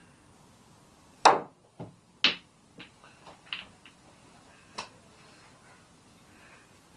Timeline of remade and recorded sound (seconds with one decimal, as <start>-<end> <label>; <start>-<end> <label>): 0.0-7.0 recorded